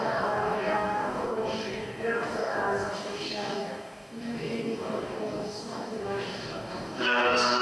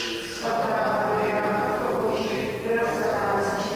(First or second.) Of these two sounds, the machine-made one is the first